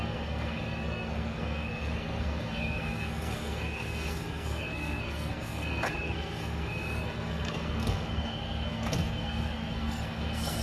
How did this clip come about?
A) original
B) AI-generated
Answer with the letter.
B